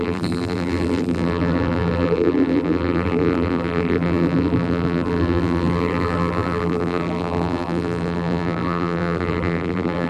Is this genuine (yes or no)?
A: no